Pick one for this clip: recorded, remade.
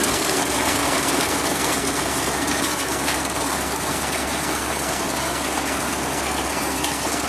remade